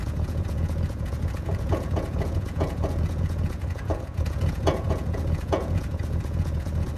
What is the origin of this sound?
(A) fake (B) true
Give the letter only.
A